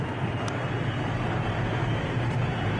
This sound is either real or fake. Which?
real